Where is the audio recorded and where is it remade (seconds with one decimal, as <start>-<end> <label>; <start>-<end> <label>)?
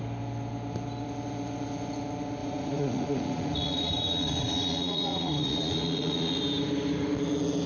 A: 0.0-2.4 recorded; 2.4-6.4 remade; 6.4-7.7 recorded